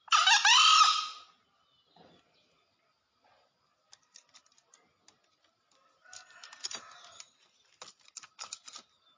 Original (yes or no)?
yes